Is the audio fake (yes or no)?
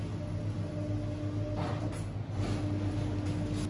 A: no